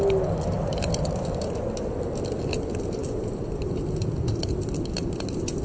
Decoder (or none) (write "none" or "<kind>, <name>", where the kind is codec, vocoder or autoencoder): none